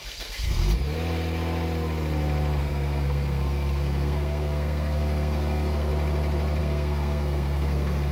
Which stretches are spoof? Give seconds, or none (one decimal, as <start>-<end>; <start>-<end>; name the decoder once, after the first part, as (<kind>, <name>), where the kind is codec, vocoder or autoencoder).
0.0-0.6 (codec, SNAC); 2.6-5.9; 6.6-8.1